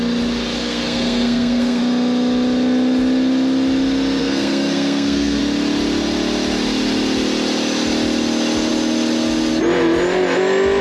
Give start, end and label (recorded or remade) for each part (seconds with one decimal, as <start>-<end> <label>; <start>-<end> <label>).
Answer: 0.0-0.6 recorded; 0.6-1.8 remade; 1.8-4.2 recorded; 4.2-5.4 remade; 5.4-10.8 recorded